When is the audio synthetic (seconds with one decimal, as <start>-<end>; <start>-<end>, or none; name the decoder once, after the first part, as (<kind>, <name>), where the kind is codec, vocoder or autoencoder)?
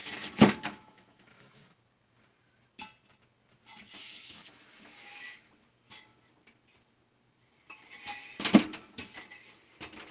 0.0-1.8 (autoencoder, DAC-VAE); 4.0-5.5